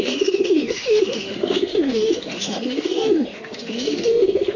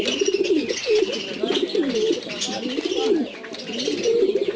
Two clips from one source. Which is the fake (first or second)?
first